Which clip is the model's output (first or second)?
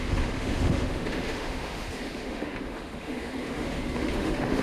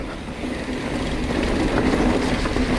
first